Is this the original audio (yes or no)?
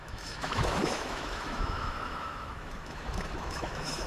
no